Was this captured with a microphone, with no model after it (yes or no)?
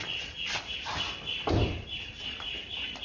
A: yes